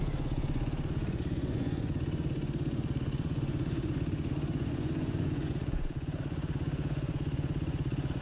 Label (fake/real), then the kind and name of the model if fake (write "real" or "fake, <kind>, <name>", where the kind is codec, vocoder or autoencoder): fake, vocoder, Vocos